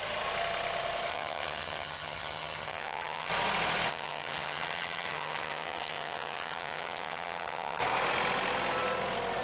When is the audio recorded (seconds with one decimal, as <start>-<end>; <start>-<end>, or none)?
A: 0.0-1.1; 3.3-3.9; 7.8-9.4

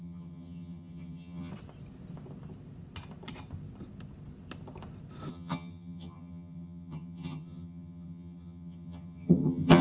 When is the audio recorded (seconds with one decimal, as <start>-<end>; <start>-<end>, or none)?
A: 1.5-5.3

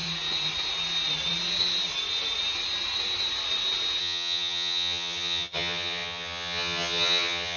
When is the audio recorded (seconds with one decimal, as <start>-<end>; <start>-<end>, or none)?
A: 0.0-4.0

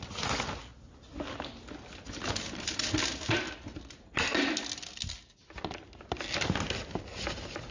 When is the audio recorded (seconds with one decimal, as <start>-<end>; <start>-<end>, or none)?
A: 0.0-7.7

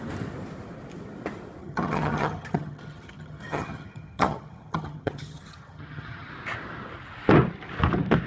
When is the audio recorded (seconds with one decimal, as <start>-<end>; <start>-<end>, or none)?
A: 0.0-1.6; 6.3-8.3

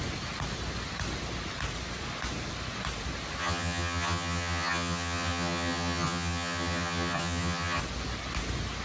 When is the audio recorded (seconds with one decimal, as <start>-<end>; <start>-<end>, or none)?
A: 0.0-3.4; 7.8-8.8